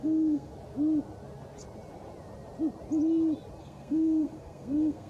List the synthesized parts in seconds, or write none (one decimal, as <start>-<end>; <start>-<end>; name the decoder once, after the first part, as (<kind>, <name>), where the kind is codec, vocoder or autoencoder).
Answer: 0.0-0.5 (codec, SNAC); 3.6-5.1